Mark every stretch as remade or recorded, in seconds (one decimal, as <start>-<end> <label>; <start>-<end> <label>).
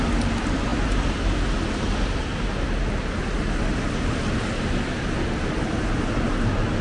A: 0.0-6.8 recorded